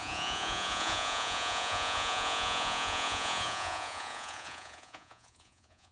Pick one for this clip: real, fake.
fake